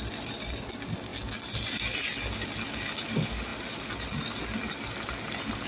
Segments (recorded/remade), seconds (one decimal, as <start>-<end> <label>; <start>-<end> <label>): 0.0-5.7 recorded

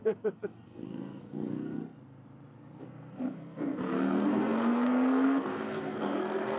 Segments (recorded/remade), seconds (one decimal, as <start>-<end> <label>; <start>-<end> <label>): 0.0-1.8 remade; 1.8-2.8 recorded; 2.8-6.6 remade

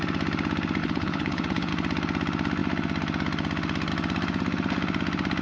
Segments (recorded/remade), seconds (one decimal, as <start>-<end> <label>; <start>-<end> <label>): 0.0-0.8 recorded; 0.8-1.7 remade; 1.7-5.4 recorded

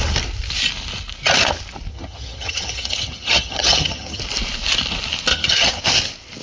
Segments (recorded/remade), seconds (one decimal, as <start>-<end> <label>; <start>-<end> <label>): 0.0-1.9 recorded; 1.9-4.2 remade; 4.2-5.3 recorded; 5.3-5.8 remade; 5.8-6.4 recorded